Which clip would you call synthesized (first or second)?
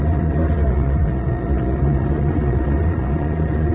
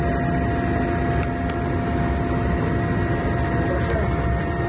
first